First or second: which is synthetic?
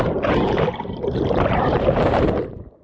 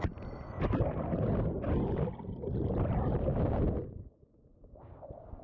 first